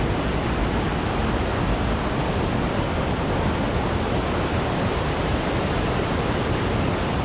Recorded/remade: recorded